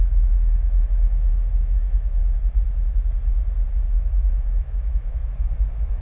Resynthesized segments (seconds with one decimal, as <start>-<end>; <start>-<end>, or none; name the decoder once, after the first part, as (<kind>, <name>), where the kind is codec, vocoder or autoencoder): 0.0-2.2 (autoencoder, DAC-VAE); 3.9-5.2